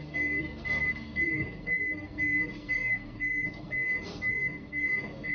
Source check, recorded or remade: remade